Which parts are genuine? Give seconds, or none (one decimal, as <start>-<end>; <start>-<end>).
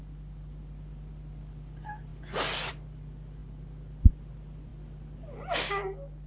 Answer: 0.0-6.3